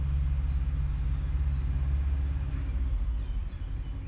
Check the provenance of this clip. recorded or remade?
recorded